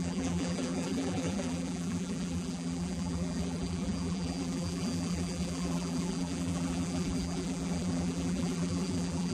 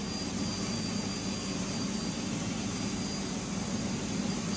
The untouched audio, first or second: second